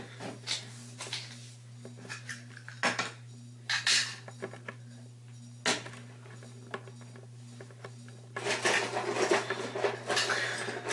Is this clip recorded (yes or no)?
yes